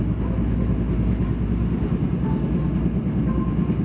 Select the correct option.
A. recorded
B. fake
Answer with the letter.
A